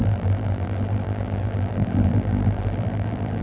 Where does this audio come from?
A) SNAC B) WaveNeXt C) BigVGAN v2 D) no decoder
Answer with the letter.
C